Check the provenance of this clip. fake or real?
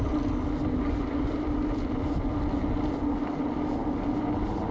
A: real